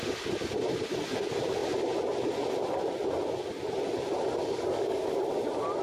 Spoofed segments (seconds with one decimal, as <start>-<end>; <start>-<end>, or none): 4.4-5.1